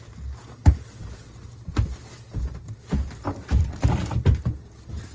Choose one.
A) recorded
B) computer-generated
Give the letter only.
A